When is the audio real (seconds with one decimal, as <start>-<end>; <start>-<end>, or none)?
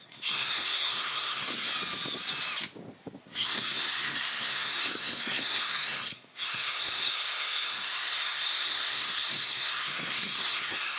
1.7-3.2